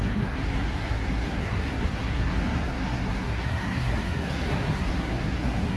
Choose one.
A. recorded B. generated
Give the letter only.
B